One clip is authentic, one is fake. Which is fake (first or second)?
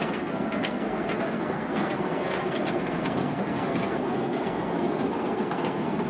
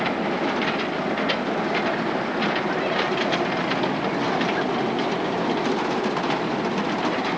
first